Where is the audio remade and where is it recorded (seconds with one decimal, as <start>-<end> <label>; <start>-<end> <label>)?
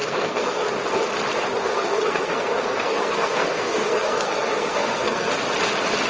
0.0-0.7 remade; 0.7-1.6 recorded; 1.6-5.3 remade; 5.3-6.1 recorded